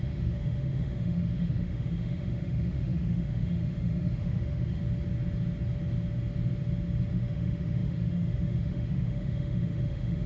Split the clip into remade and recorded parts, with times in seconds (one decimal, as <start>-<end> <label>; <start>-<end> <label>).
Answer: 0.0-4.8 remade; 4.8-7.1 recorded; 7.1-10.3 remade